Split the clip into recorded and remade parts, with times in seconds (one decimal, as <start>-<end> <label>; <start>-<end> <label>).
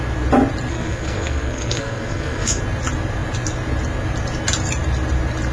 0.0-0.7 recorded; 0.7-2.6 remade; 2.6-5.5 recorded